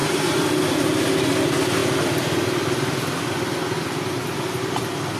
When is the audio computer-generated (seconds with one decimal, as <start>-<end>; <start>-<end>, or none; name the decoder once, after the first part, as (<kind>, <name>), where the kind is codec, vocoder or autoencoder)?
0.0-0.8 (vocoder, BigVGAN v2)